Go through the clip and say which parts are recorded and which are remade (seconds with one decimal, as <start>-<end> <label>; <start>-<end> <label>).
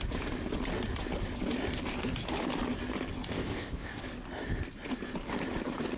0.0-3.3 recorded; 3.3-4.0 remade; 4.0-6.0 recorded